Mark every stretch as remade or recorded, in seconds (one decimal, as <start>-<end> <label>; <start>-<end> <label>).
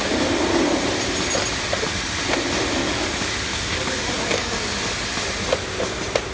0.0-2.8 recorded; 2.8-4.8 remade; 4.8-6.3 recorded